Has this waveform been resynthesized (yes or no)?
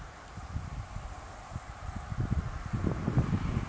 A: no